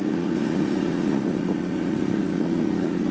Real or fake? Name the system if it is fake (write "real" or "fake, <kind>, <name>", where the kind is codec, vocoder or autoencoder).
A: fake, vocoder, Vocos